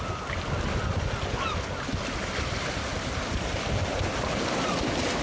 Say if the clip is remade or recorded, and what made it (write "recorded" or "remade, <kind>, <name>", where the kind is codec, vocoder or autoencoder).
recorded